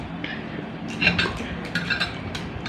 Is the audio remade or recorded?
remade